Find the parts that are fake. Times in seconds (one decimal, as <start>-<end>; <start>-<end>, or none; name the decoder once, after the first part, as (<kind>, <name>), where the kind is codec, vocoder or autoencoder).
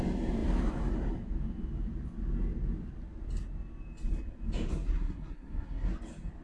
4.7-5.9 (codec, SNAC)